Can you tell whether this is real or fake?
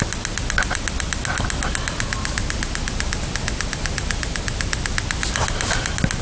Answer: real